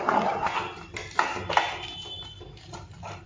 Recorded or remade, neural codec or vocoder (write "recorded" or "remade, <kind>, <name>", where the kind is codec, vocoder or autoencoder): recorded